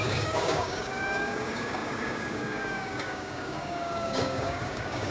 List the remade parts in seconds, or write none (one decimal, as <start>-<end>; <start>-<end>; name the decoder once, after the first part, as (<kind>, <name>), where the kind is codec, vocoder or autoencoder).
0.0-5.1 (codec, DAC)